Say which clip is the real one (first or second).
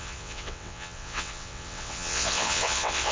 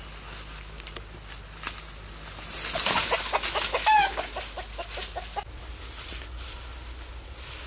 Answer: second